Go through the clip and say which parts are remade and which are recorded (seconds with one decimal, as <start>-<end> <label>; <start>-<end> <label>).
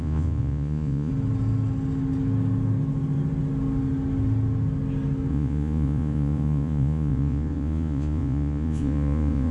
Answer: 0.0-1.1 remade; 1.1-5.3 recorded; 5.3-9.5 remade